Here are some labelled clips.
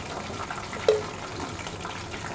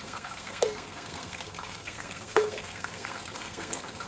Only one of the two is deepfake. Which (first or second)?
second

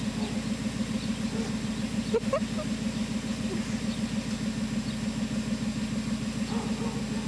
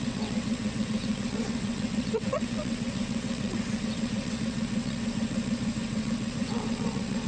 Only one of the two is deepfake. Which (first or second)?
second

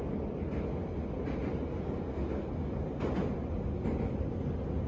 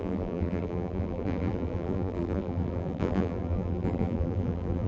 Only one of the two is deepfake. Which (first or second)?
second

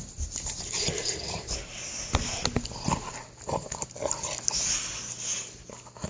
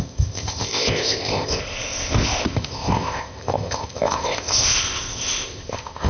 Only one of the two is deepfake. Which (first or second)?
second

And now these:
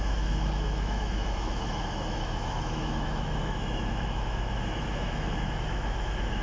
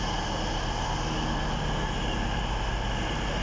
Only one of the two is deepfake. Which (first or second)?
first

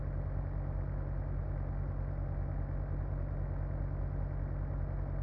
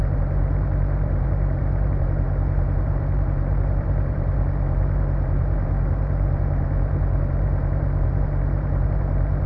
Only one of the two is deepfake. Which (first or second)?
second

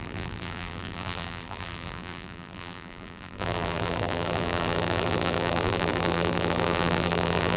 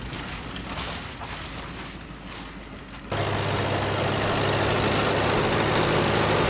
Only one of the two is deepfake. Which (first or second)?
first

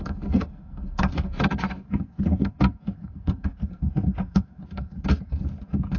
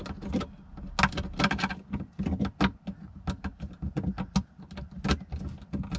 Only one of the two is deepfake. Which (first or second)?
first